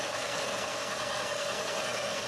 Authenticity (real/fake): fake